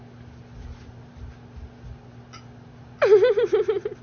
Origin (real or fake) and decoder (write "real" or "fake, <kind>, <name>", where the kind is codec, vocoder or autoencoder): real